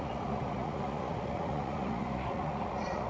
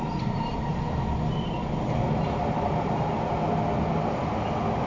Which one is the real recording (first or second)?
second